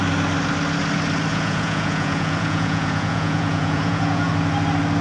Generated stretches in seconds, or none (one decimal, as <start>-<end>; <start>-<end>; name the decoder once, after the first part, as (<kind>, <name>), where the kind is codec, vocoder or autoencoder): 1.3-4.3 (vocoder, Vocos)